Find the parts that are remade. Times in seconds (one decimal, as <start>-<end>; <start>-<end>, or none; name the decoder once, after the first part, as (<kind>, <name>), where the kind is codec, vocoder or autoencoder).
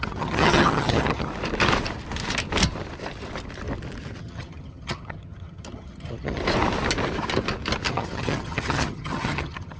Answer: 0.0-1.3 (vocoder, HiFi-GAN); 4.2-6.4; 7.9-9.8